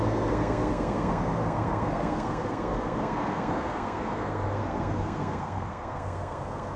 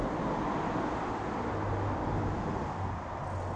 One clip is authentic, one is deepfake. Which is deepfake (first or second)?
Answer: first